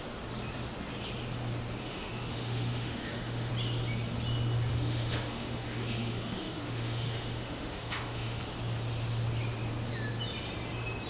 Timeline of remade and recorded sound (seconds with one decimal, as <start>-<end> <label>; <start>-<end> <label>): 0.0-1.8 recorded; 1.8-3.5 remade; 3.5-4.7 recorded; 4.7-8.4 remade; 8.4-11.1 recorded